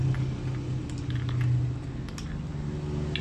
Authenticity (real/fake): real